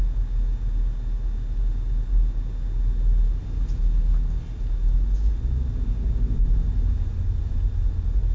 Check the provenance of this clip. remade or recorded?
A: recorded